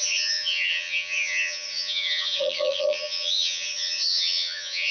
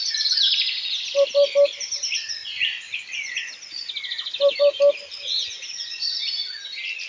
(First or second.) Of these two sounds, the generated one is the first